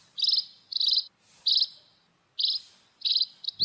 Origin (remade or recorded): recorded